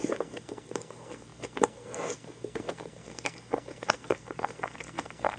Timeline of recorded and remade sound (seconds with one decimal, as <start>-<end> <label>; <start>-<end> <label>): 0.0-5.4 remade